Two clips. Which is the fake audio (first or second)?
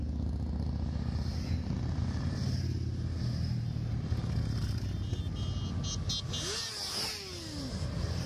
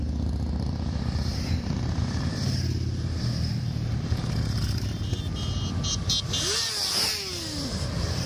second